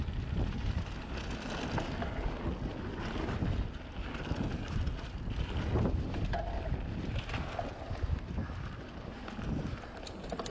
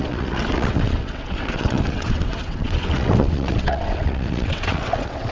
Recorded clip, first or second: first